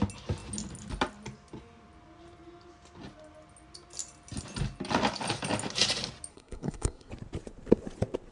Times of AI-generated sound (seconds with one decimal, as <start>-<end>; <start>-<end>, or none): 6.3-7.1